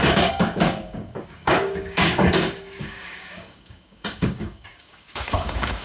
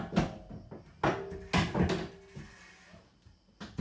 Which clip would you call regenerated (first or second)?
first